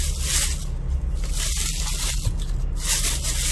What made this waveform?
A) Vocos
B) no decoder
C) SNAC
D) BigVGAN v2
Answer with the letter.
B